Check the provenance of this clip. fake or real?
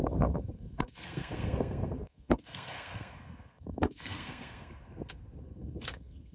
fake